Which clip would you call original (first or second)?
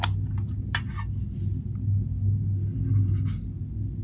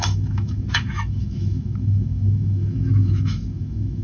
first